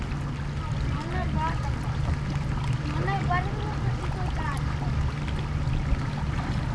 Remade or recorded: recorded